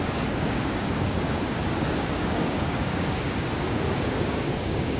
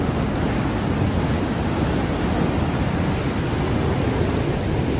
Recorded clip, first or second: second